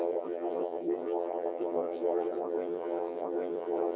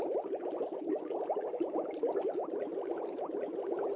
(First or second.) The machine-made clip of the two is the first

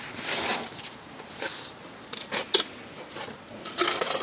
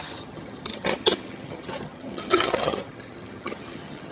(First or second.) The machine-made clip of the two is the second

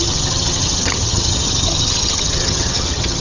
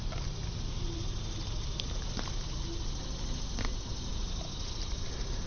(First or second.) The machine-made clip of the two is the first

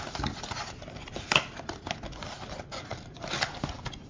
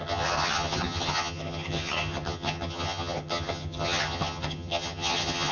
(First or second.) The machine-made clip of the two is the second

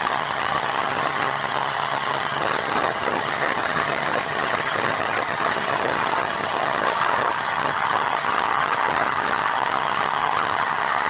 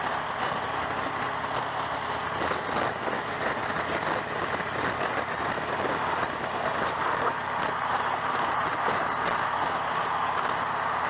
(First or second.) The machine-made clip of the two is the first